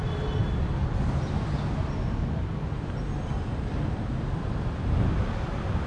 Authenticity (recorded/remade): recorded